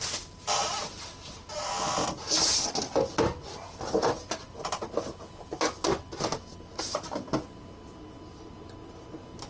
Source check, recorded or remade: recorded